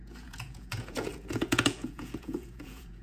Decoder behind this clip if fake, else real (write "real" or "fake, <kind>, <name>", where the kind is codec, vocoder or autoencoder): fake, vocoder, Vocos